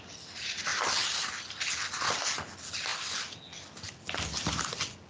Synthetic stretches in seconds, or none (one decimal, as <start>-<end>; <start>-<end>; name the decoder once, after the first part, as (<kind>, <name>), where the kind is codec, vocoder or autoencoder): 0.7-1.3 (vocoder, BigVGAN v2)